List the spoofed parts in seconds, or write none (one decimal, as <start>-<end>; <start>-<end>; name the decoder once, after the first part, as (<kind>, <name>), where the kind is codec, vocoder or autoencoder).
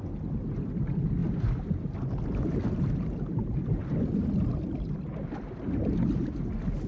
none